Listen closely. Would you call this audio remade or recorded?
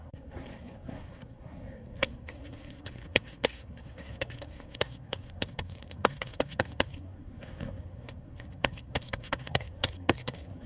remade